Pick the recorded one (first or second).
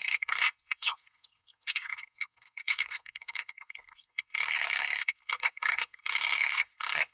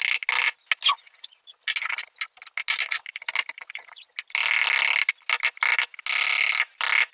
second